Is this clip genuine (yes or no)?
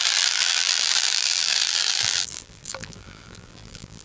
no